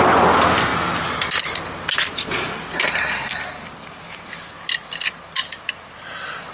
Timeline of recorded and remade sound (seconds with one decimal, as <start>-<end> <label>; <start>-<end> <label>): 0.0-6.5 recorded